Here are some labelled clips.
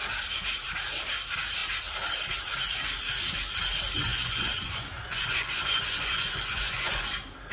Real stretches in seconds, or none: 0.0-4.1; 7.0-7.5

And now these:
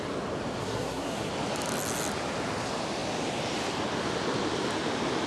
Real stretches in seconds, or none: 0.0-0.6; 1.3-5.3

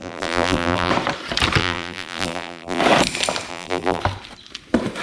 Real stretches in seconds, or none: 0.9-1.6; 2.8-3.5; 4.0-5.0

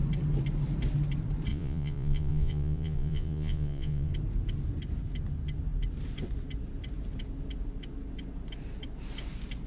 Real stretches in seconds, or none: 0.0-1.5; 4.1-9.7

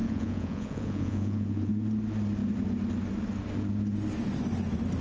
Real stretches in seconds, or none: 1.7-5.0

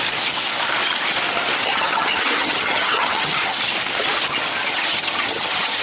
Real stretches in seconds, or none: 0.0-1.6; 3.6-4.6

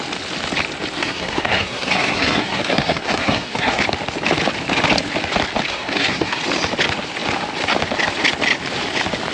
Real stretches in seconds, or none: 0.0-1.0; 3.8-5.7; 6.4-9.3

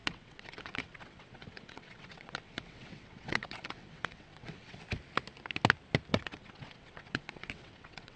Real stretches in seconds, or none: 4.8-6.1